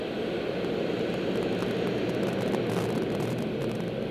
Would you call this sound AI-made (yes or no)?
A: no